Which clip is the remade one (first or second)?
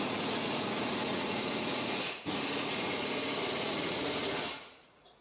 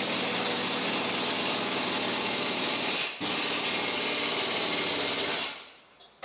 first